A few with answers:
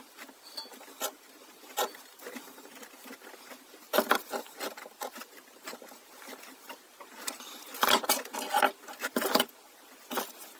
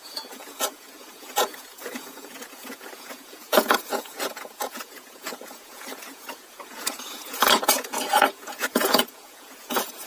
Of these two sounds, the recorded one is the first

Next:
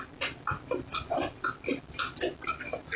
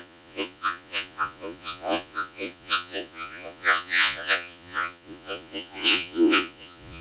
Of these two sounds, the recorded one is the first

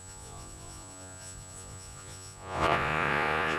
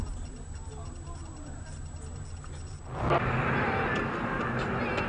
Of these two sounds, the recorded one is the second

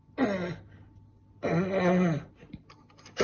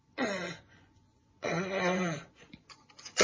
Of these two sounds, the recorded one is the first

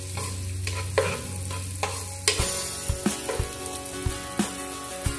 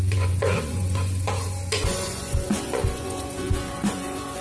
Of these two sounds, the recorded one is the first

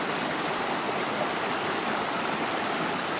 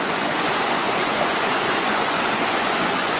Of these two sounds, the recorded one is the first